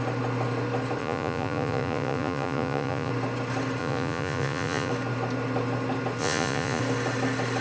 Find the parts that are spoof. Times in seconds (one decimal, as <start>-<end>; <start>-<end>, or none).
1.0-3.1; 3.8-4.9; 6.2-6.8